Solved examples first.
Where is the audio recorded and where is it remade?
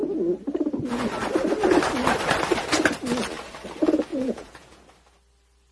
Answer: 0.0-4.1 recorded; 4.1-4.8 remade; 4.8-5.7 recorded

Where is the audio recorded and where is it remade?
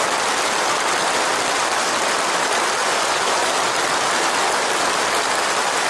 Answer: 0.0-2.8 recorded; 2.8-3.5 remade; 3.5-5.9 recorded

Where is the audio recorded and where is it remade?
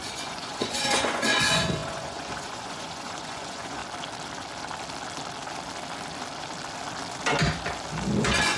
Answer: 0.0-3.8 remade; 3.8-8.2 recorded; 8.2-8.6 remade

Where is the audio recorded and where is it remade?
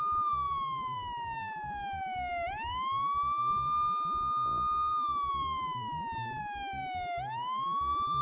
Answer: 0.0-8.2 recorded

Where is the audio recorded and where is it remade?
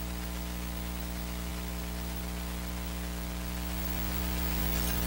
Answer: 0.0-5.1 recorded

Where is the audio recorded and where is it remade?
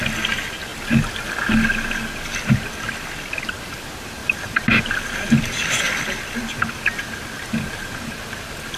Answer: 0.0-8.8 recorded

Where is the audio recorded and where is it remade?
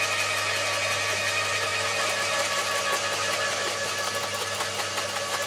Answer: 0.0-5.5 recorded